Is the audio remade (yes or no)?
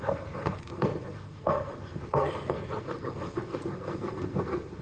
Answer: yes